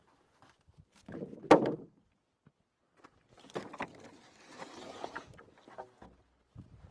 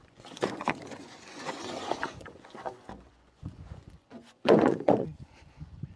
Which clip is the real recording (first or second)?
first